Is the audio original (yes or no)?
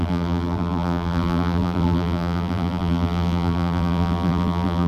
no